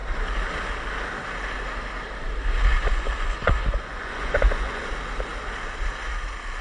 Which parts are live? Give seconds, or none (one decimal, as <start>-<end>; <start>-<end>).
0.0-2.7; 4.8-6.6

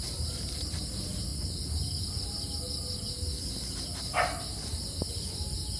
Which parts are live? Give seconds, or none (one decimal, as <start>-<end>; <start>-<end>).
0.0-5.8